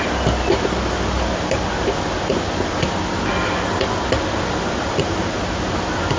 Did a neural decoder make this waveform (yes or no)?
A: no